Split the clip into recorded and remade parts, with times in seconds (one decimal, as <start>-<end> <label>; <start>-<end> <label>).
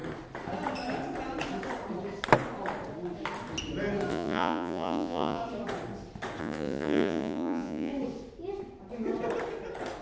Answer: 0.0-4.1 recorded; 4.1-5.4 remade; 5.4-6.4 recorded; 6.4-7.9 remade; 7.9-10.0 recorded